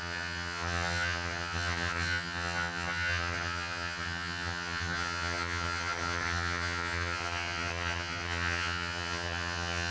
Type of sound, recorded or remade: remade